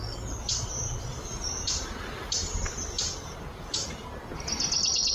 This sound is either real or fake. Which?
real